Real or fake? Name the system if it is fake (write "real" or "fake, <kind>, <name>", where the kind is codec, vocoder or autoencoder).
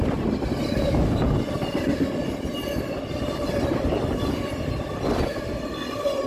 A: real